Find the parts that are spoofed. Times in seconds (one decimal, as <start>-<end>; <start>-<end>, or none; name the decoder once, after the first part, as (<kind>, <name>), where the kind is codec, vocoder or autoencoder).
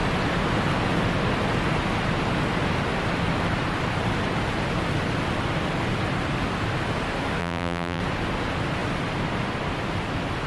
7.4-8.0 (vocoder, BigVGAN v2)